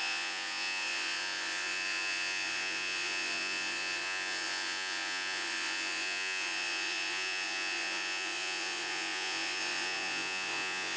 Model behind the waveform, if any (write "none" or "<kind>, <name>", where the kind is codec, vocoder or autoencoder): vocoder, Vocos